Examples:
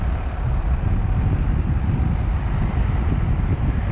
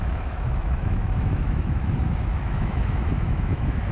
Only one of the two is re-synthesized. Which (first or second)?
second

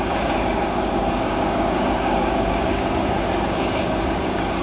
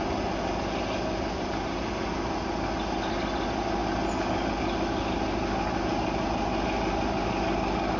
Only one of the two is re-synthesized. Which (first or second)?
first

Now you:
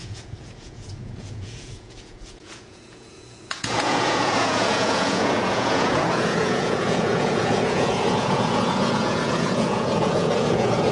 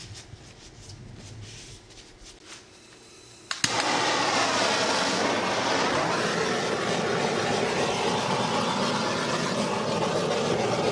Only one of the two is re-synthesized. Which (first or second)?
first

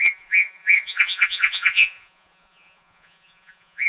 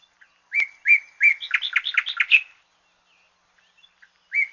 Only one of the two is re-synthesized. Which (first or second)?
first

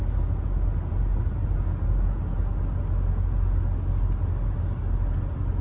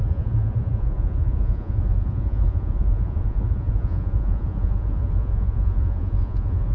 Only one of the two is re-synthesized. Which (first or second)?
second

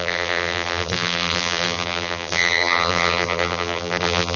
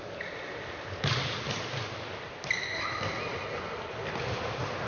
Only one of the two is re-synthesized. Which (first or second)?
first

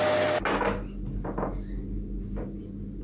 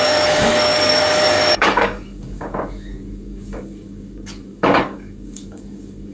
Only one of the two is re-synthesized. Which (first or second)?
second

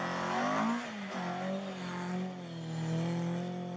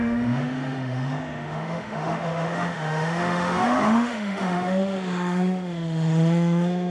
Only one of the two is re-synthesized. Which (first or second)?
second